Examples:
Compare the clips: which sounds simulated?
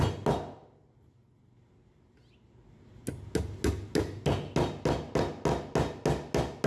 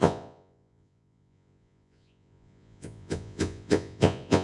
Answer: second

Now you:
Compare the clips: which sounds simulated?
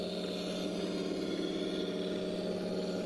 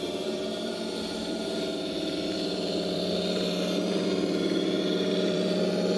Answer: second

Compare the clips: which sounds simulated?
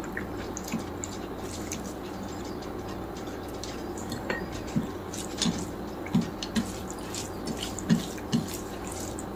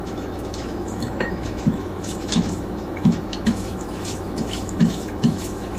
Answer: second